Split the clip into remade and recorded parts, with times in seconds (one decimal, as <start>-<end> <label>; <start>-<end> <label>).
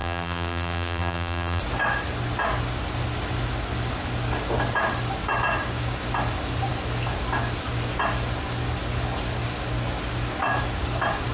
0.0-1.6 remade; 1.6-11.3 recorded